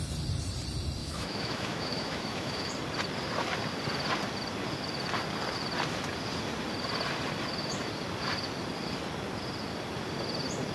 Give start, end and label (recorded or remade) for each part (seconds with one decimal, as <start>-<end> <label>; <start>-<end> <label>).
0.0-1.0 recorded; 1.0-2.7 remade; 2.7-10.7 recorded